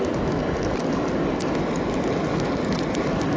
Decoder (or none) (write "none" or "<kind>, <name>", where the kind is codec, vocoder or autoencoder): none